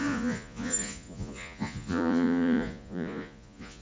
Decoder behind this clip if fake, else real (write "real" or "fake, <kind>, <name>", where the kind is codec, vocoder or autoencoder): fake, vocoder, Vocos